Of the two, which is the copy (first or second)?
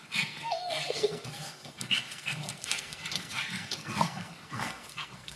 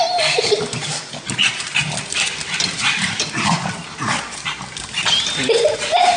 first